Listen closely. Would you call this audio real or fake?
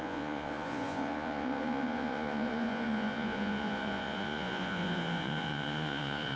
fake